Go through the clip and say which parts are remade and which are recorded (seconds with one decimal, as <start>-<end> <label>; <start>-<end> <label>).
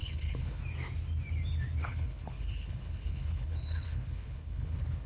0.0-0.6 remade; 0.6-1.8 recorded; 1.8-5.1 remade